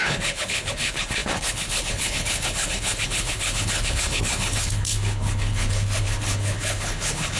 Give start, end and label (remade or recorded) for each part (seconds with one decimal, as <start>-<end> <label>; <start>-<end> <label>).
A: 0.0-7.4 remade